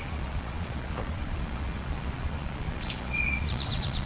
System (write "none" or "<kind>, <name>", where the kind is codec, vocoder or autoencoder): vocoder, Vocos